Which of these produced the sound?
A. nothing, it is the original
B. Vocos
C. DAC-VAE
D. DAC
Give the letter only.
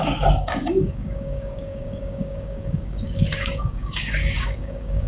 D